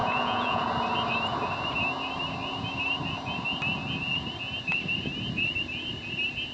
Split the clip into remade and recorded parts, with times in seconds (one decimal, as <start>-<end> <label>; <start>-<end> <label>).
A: 0.0-0.6 remade; 0.6-6.5 recorded